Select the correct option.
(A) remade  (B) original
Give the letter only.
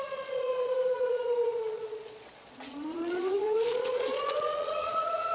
A